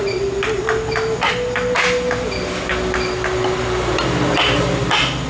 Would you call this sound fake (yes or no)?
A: no